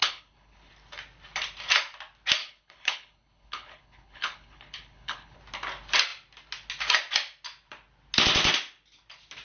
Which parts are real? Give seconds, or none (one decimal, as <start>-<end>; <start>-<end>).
0.7-2.4; 5.4-9.4